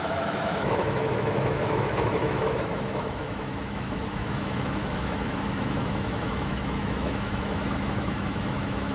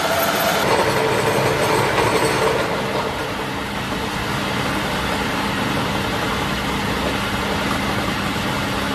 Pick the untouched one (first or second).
second